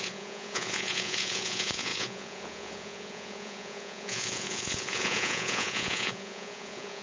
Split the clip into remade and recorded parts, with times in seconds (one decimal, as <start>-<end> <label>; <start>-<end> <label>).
0.0-7.0 remade